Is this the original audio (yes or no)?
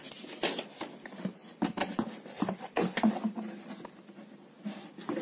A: yes